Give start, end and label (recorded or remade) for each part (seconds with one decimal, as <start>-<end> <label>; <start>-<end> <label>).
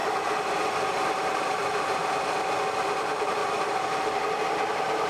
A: 0.0-0.9 recorded; 0.9-2.0 remade; 2.0-2.9 recorded; 2.9-3.4 remade; 3.4-4.5 recorded; 4.5-5.1 remade